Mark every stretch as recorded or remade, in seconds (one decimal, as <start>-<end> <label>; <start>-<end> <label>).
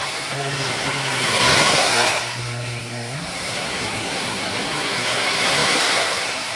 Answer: 0.0-6.6 remade